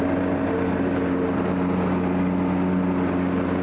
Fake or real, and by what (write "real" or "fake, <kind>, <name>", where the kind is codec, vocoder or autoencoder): real